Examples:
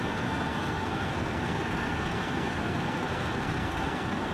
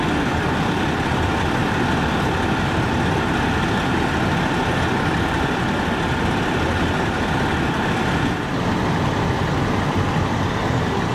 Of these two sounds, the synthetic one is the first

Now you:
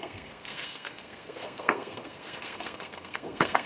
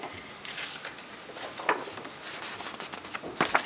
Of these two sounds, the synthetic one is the first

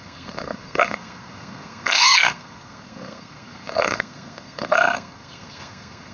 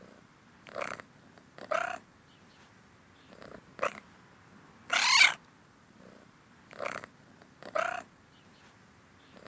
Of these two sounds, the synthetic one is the first